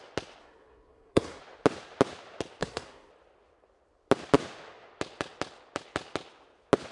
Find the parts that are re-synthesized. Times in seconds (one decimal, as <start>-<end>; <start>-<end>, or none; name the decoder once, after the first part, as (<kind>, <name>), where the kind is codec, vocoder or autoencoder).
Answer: 0.4-1.4 (codec, SNAC); 2.6-3.1